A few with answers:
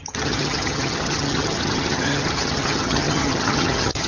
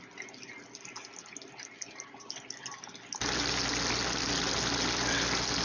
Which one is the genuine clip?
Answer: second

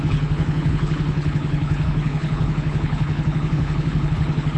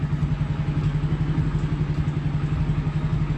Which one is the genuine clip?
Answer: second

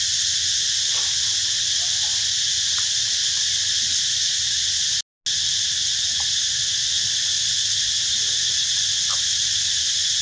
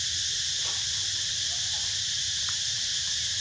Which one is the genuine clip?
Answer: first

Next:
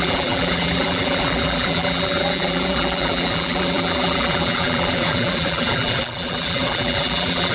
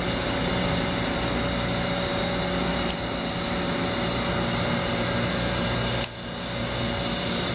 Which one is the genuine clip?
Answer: second